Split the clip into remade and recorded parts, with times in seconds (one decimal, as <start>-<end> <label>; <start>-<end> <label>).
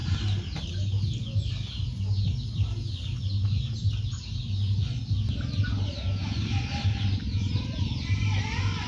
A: 0.0-6.4 recorded; 6.4-7.8 remade; 7.8-8.9 recorded